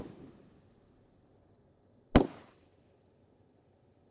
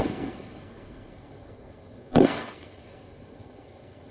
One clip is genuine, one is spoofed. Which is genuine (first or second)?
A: first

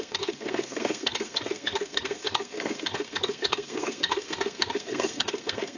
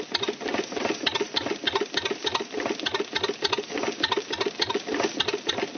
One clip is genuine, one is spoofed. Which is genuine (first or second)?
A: second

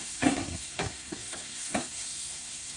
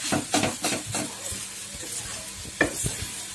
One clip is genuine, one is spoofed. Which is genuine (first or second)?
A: second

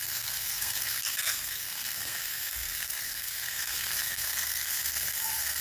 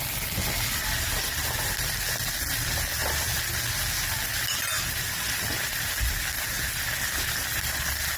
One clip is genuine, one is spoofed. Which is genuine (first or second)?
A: second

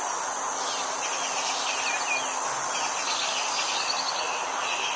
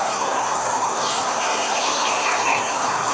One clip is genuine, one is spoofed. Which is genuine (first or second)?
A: first